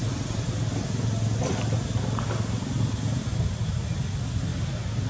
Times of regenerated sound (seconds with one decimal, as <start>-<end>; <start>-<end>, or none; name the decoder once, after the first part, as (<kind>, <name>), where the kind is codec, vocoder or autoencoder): none